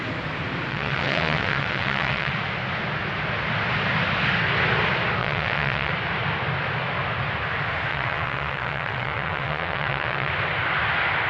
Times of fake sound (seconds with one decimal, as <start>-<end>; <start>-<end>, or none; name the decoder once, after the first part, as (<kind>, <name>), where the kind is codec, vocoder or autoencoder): 0.7-2.3 (vocoder, WaveNeXt); 5.2-5.9; 7.9-10.3